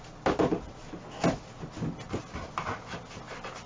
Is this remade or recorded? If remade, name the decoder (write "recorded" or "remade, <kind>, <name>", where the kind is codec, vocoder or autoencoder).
recorded